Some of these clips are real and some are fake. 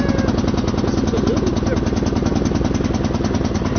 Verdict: real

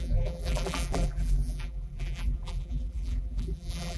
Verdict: fake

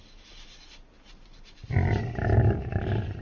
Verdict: real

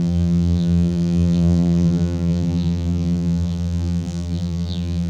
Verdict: fake